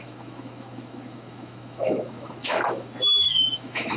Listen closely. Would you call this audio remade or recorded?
remade